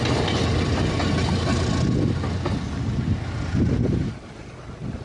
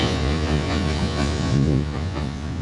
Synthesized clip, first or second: second